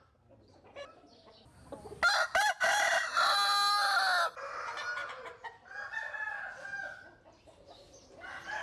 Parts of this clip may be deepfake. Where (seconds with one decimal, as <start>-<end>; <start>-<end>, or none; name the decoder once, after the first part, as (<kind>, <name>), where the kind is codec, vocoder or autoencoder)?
none